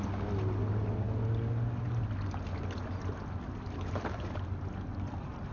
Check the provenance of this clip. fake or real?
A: real